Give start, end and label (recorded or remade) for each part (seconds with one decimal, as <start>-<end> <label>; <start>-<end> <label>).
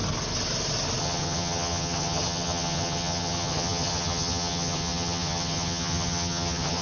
0.0-1.0 recorded; 1.0-6.8 remade